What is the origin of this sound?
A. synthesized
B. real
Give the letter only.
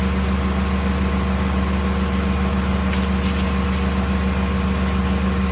B